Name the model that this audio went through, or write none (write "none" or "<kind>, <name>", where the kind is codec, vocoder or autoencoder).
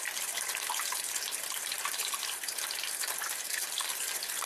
none